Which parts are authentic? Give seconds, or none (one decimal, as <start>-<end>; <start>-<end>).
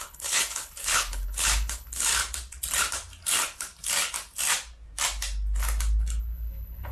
2.1-6.2